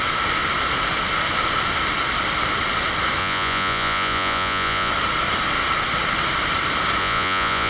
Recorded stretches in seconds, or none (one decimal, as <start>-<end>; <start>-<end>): 0.0-3.2; 4.9-7.0